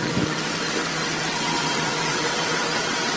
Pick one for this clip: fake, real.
fake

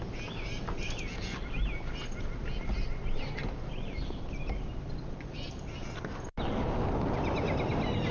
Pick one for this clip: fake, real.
real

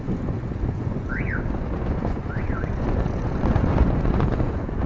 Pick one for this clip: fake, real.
fake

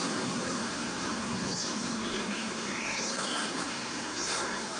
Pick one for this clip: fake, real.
fake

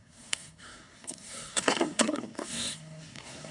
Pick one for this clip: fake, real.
fake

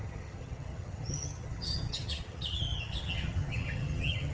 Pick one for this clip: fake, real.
fake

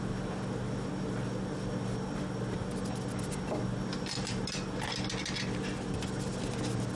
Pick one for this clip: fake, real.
real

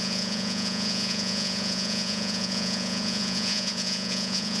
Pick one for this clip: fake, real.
fake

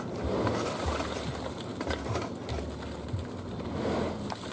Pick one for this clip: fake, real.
real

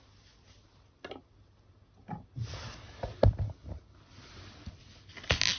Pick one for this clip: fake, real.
real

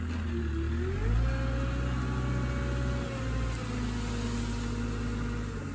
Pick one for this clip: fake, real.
real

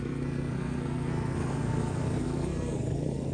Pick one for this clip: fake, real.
fake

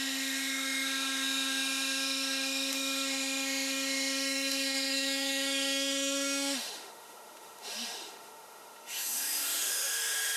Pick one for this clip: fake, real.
fake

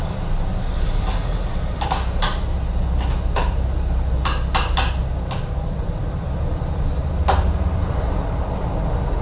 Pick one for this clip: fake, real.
real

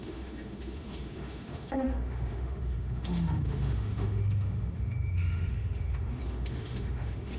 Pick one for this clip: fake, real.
fake